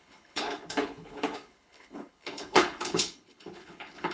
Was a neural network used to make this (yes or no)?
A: yes